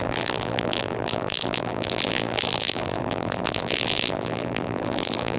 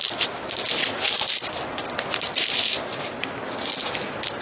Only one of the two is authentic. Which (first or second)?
second